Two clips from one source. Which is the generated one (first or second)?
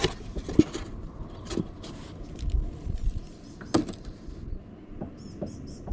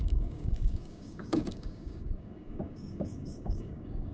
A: second